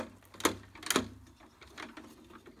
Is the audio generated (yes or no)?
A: no